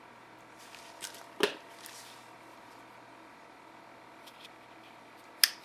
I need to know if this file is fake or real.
real